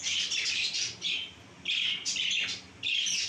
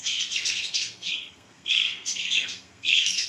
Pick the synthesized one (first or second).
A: second